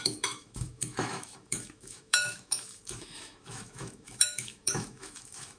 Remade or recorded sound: remade